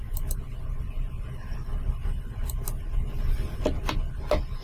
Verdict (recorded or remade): recorded